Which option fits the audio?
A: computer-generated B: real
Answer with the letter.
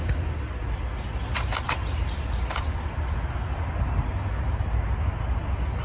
B